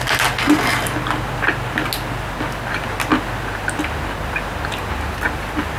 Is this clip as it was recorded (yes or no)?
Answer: yes